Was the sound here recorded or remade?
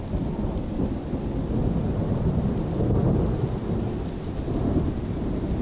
recorded